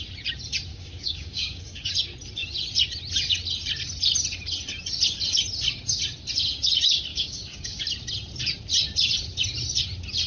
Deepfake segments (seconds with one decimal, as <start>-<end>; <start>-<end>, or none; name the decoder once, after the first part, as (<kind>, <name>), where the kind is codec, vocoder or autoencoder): 0.7-1.9 (codec, DAC); 7.1-7.8